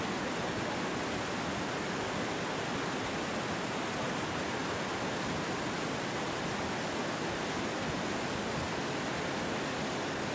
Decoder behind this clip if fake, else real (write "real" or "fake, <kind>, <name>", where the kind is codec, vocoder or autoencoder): real